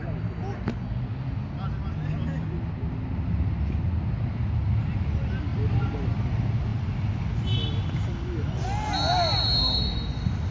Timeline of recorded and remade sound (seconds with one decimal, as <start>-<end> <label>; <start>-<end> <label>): 0.0-10.5 recorded

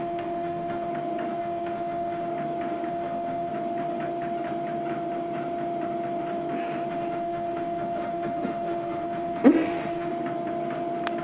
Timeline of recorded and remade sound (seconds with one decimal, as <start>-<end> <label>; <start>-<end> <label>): 0.0-0.9 remade; 0.9-1.4 recorded; 1.4-2.3 remade; 2.3-2.9 recorded; 2.9-3.5 remade; 3.5-6.9 recorded; 6.9-10.1 remade; 10.1-11.2 recorded